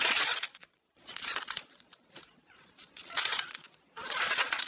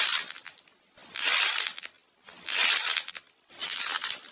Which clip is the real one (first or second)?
second